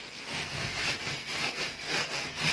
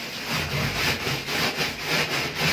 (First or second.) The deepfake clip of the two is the first